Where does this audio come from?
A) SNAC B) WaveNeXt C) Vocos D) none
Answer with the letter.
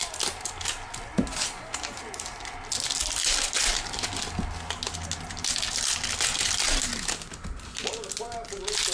D